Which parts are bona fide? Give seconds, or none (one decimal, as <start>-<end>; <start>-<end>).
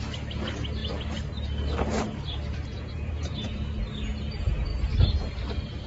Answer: 0.0-2.7; 3.3-5.9